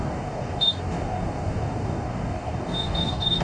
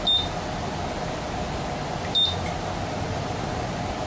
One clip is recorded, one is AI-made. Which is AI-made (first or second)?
first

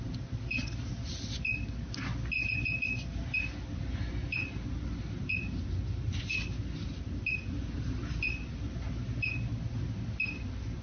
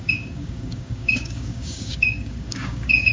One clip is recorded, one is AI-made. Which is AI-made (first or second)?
second